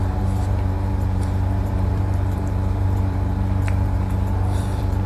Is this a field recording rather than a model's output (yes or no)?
no